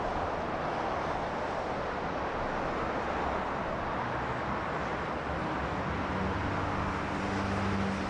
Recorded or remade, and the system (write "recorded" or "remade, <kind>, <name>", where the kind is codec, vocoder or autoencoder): recorded